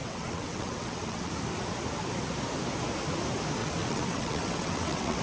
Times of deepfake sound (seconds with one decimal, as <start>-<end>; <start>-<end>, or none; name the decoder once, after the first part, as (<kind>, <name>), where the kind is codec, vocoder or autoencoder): 0.0-1.3 (vocoder, WaveNeXt); 3.6-5.2